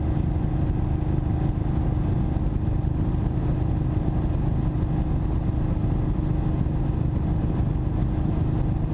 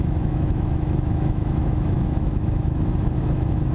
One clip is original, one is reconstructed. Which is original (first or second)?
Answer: first